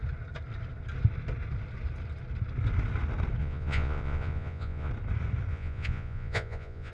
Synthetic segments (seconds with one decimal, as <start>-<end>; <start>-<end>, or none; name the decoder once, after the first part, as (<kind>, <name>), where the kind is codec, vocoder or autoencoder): 3.4-4.9 (vocoder, Vocos); 5.5-6.9